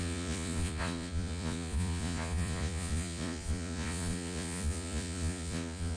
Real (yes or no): no